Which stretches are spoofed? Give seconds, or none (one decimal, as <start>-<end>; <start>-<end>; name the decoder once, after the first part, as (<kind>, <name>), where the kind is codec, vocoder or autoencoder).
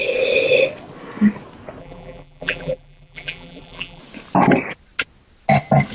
1.8-4.0 (vocoder, BigVGAN v2)